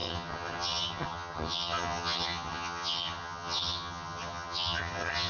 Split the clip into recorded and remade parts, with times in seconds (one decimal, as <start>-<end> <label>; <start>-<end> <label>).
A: 0.0-5.3 remade